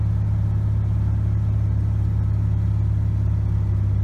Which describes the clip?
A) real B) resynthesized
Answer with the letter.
A